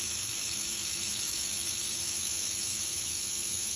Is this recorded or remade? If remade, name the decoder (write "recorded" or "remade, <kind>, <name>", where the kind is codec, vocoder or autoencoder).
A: remade, autoencoder, DAC-VAE